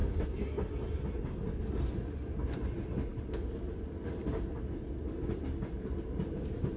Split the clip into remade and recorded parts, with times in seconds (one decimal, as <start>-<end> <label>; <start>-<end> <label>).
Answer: 0.0-6.8 recorded